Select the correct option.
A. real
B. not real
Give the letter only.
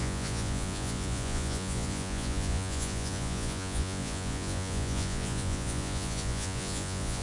B